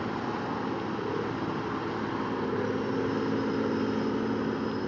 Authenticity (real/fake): real